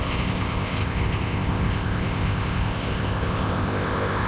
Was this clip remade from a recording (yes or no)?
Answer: yes